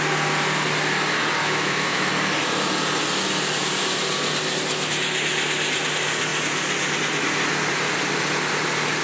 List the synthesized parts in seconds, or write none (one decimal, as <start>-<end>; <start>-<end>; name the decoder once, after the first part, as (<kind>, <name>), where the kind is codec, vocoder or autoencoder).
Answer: 1.4-2.1 (autoencoder, DAC-VAE)